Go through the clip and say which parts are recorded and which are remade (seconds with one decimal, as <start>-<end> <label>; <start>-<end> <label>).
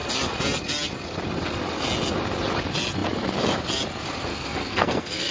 0.0-4.3 recorded; 4.3-5.3 remade